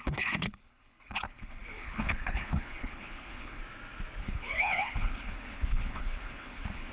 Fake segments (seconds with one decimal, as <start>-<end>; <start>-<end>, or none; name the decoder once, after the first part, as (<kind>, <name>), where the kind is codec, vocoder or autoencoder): 0.0-3.6 (codec, HILCodec); 4.2-6.9